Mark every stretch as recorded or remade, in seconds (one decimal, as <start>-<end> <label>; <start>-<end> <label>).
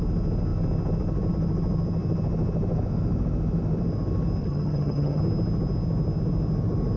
0.0-4.4 recorded; 4.4-5.2 remade; 5.2-7.0 recorded